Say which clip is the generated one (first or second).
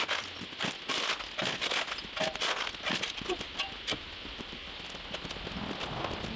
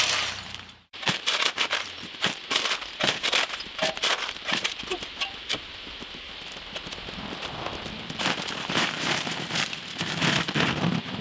second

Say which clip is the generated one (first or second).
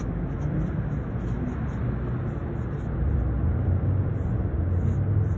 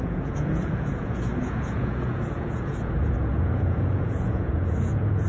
second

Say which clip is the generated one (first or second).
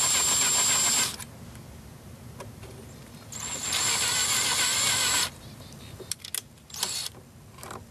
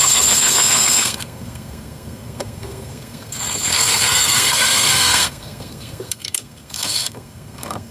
second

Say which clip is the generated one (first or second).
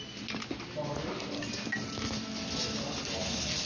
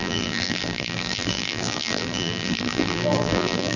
second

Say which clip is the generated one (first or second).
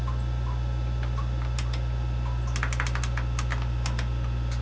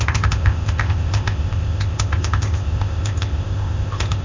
second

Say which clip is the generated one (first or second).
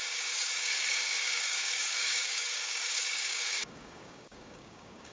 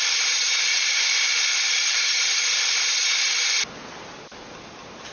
first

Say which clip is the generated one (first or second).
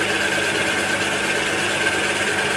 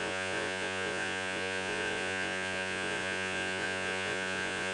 second